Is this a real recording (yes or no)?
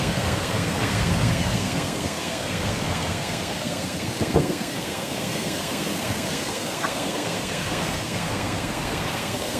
no